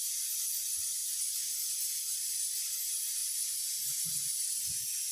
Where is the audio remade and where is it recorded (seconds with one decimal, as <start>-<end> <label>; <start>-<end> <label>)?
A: 0.0-5.1 recorded